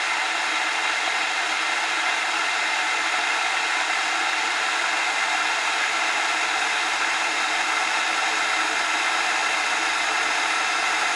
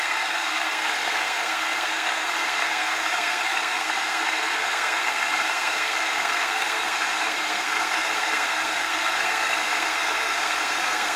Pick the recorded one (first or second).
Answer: first